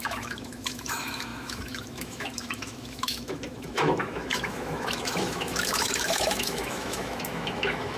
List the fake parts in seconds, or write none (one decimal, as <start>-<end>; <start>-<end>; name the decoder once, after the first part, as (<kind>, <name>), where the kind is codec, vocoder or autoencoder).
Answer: 0.0-8.0 (autoencoder, DAC-VAE)